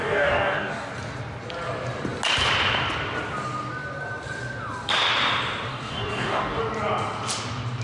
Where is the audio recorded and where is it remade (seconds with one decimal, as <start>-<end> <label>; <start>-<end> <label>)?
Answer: 0.0-0.9 remade; 0.9-5.7 recorded; 5.7-6.6 remade; 6.6-7.8 recorded